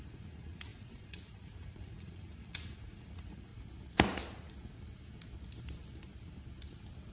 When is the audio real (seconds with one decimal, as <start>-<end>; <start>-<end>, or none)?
3.5-7.1